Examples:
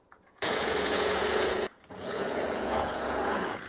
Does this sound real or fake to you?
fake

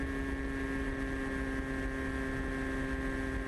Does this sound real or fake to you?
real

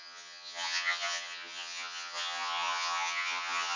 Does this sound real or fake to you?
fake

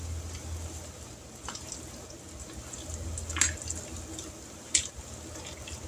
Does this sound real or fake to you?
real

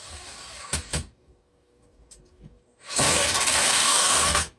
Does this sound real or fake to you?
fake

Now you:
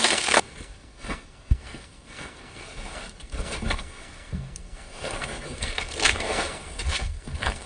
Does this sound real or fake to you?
fake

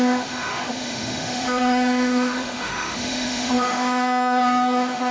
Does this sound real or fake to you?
fake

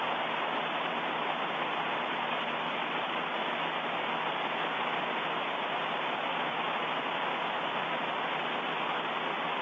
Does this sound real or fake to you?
real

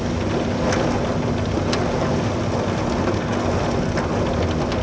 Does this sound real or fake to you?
real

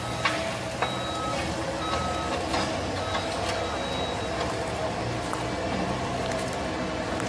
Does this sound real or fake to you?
real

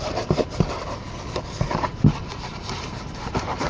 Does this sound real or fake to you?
fake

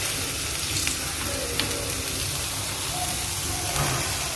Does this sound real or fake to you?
real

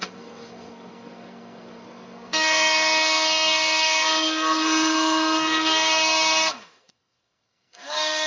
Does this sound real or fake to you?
fake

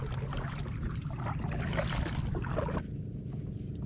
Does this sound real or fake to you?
real